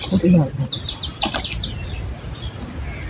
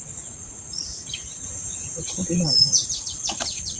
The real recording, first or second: first